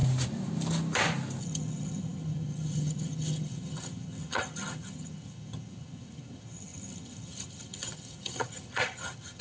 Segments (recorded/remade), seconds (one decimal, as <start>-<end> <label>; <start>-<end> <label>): 0.0-1.4 recorded; 1.4-9.4 remade